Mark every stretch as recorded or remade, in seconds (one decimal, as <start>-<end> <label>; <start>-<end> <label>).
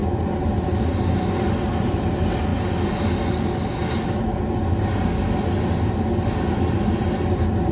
0.0-7.7 recorded